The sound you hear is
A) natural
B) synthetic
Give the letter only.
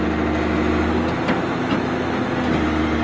A